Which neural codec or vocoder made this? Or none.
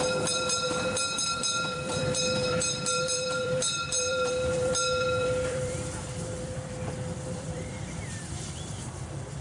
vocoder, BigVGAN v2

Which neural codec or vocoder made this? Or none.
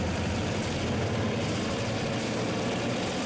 none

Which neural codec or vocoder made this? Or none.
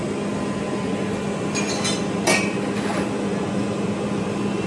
none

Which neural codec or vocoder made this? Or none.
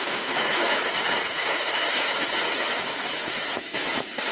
autoencoder, DAC-VAE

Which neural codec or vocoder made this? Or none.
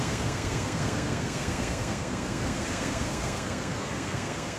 codec, SNAC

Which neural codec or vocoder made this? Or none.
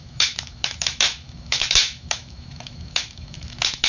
autoencoder, DAC-VAE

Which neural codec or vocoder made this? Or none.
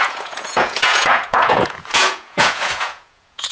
vocoder, Vocos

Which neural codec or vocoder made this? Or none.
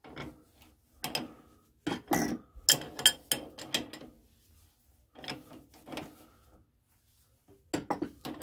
none